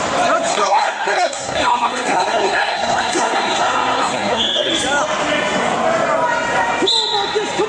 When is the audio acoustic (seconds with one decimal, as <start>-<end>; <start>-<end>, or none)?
0.0-0.5; 4.7-7.7